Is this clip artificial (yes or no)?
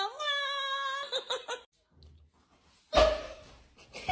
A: no